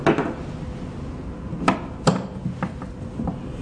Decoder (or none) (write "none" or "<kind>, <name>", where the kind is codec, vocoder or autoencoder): none